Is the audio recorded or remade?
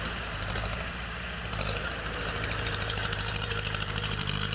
remade